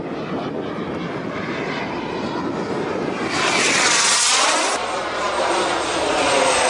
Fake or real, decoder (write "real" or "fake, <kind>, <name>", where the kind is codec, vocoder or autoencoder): real